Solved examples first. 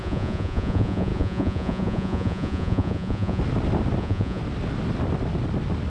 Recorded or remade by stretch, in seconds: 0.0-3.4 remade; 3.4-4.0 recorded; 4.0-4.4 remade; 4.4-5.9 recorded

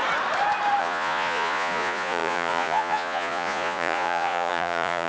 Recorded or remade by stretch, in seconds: 0.0-0.8 recorded; 0.8-5.1 remade

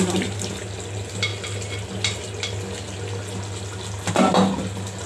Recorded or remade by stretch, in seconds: 0.0-5.1 recorded

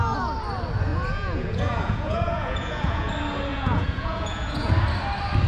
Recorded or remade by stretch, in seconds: 0.0-0.9 recorded; 0.9-3.1 remade; 3.1-3.5 recorded; 3.5-4.7 remade; 4.7-5.5 recorded

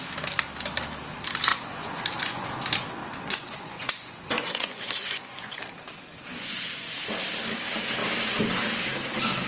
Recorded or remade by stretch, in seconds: 0.0-1.5 recorded; 1.5-2.5 remade; 2.5-3.0 recorded; 3.0-5.6 remade; 5.6-6.3 recorded; 6.3-6.9 remade; 6.9-9.5 recorded

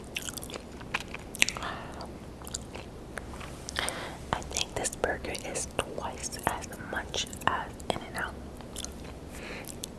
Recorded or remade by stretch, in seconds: 0.0-6.2 recorded; 6.2-7.8 remade; 7.8-10.0 recorded